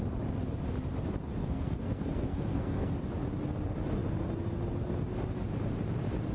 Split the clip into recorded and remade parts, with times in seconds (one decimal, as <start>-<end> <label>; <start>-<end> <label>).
0.0-1.4 recorded; 1.4-3.0 remade; 3.0-6.3 recorded